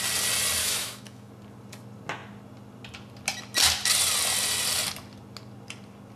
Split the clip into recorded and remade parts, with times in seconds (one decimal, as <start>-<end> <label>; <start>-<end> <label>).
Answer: 0.0-0.6 recorded; 0.6-1.3 remade; 1.3-6.2 recorded